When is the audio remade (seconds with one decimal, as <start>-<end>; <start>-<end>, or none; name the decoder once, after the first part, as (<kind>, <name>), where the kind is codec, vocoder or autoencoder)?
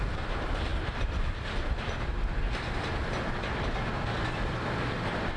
none